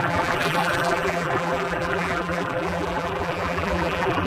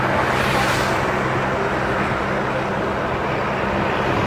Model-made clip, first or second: first